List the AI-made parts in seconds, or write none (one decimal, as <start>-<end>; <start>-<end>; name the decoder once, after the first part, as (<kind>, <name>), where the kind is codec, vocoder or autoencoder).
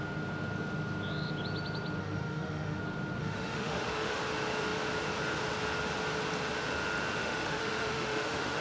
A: 2.0-2.8 (autoencoder, DAC-VAE); 3.2-4.2; 7.2-8.6